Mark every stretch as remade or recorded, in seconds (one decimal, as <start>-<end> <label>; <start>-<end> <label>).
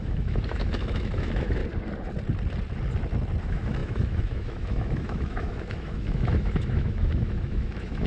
0.0-1.6 remade; 1.6-3.4 recorded; 3.4-8.1 remade